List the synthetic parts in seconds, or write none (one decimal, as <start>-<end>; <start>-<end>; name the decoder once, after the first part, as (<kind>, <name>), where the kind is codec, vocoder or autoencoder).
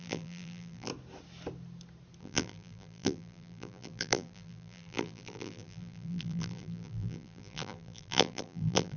0.0-0.9 (vocoder, BigVGAN v2); 2.2-9.0